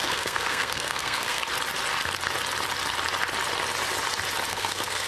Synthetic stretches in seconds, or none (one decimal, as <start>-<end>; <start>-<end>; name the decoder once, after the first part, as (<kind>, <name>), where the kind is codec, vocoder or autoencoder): 0.0-1.4 (codec, SNAC); 4.5-5.1